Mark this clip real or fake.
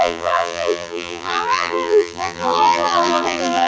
fake